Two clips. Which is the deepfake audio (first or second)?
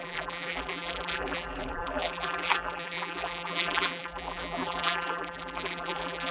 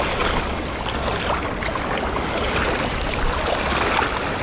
first